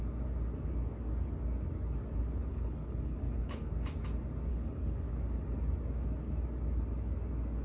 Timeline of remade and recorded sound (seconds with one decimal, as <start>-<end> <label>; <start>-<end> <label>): 0.0-2.5 recorded; 2.5-3.7 remade; 3.7-4.5 recorded; 4.5-5.1 remade; 5.1-7.6 recorded